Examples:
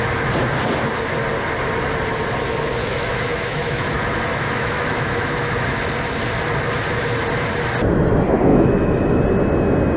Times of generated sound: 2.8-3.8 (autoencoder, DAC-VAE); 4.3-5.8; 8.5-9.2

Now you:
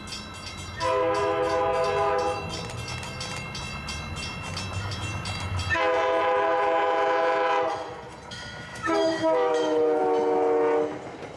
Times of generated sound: 8.7-10.0 (autoencoder, DAC-VAE)

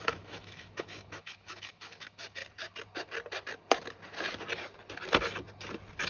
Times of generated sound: 0.0-2.4 (autoencoder, DAC-VAE)